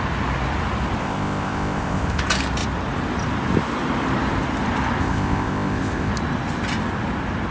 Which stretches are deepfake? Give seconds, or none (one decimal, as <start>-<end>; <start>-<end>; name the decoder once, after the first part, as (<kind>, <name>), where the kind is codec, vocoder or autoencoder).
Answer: 1.0-2.2 (codec, ZipCodec); 5.0-6.1